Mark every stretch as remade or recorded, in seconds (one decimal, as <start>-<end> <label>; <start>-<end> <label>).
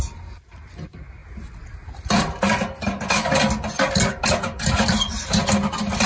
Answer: 0.0-6.1 recorded